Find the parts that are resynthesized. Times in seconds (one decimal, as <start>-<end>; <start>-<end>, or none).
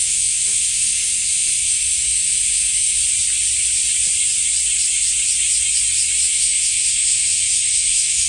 0.0-3.0; 6.3-8.3